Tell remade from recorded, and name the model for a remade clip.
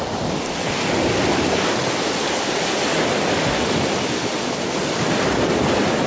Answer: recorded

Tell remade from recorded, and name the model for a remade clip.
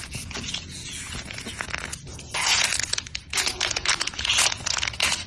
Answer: remade, vocoder, Vocos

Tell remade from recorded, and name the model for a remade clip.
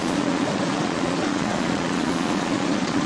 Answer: remade, vocoder, Vocos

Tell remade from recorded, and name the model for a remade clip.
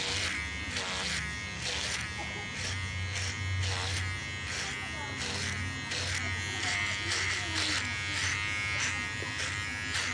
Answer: recorded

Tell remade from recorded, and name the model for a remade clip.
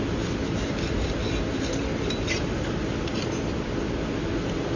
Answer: recorded